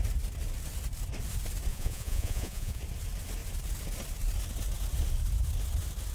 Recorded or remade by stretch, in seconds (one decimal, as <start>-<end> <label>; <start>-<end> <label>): 0.0-1.7 recorded; 1.7-2.8 remade; 2.8-6.1 recorded